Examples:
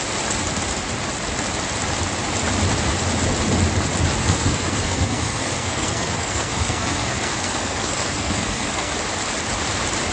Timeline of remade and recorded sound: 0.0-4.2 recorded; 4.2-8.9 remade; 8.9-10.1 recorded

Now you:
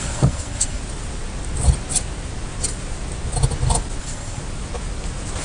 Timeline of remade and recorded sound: 0.0-0.8 remade; 0.8-4.0 recorded; 4.0-4.4 remade; 4.4-5.4 recorded

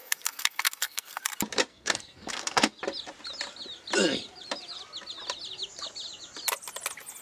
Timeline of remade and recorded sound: 0.0-1.2 remade; 1.2-1.7 recorded; 1.7-2.8 remade; 2.8-7.2 recorded

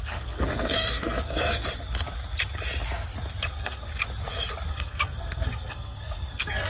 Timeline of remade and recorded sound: 0.0-1.6 remade; 1.6-3.5 recorded; 3.5-3.9 remade; 3.9-4.7 recorded; 4.7-6.7 remade

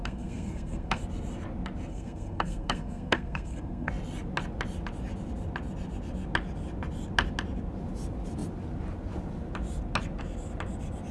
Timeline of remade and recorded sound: 0.0-1.0 remade; 1.0-1.9 recorded; 1.9-3.9 remade; 3.9-11.1 recorded

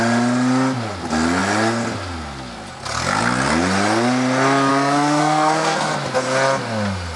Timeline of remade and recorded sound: 0.0-4.7 recorded; 4.7-5.9 remade; 5.9-7.2 recorded

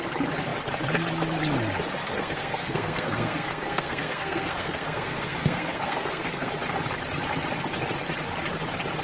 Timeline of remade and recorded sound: 0.0-2.0 recorded; 2.0-6.5 remade; 6.5-9.0 recorded